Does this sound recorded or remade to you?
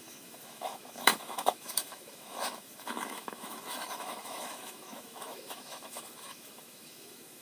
remade